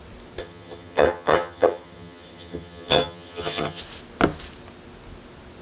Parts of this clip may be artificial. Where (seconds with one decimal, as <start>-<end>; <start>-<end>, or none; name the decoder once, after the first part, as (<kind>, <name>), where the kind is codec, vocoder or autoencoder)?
0.4-3.8 (vocoder, HiFi-GAN)